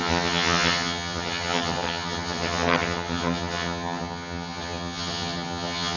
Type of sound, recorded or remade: remade